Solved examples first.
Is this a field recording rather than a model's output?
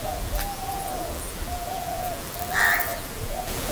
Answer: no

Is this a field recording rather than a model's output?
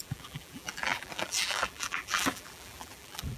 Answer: no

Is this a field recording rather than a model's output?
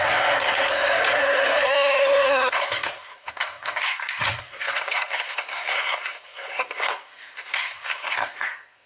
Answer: no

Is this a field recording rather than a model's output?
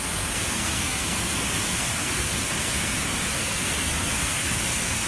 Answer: no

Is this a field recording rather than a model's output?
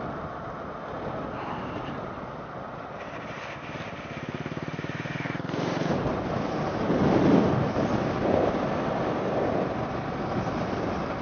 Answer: yes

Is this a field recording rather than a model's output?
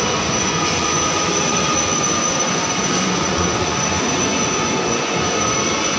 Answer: no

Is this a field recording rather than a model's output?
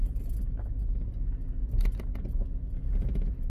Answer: yes